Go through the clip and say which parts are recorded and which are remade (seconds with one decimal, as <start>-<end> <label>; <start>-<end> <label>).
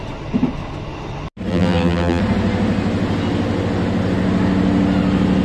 0.0-1.5 recorded; 1.5-2.2 remade; 2.2-5.4 recorded